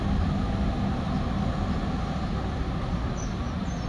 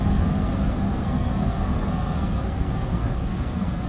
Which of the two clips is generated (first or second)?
second